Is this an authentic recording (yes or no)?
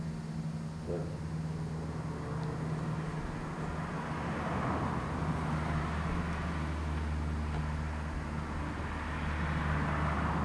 yes